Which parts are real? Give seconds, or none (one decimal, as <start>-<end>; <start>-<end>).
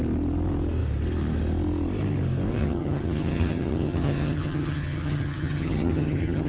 0.0-2.5